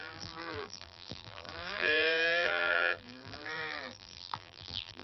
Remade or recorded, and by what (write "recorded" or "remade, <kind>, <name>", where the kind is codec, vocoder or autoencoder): remade, vocoder, BigVGAN v2